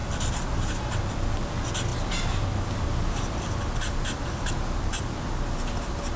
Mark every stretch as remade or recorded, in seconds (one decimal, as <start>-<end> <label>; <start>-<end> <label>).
0.0-6.2 recorded